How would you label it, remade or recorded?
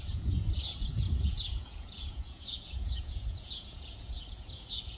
remade